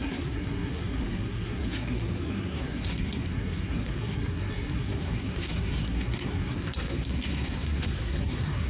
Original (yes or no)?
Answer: no